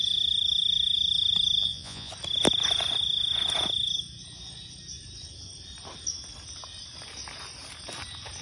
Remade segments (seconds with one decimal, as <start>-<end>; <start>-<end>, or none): 1.6-2.1